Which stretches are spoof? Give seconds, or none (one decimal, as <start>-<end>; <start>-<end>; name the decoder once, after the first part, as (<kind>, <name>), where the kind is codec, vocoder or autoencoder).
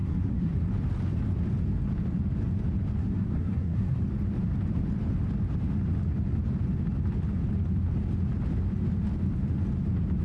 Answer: 0.0-0.5 (codec, SNAC); 3.0-4.0